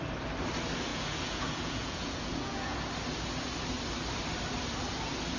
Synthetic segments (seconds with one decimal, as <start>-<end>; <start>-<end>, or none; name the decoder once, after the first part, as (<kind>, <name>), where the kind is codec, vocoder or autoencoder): 0.9-2.8 (vocoder, Vocos)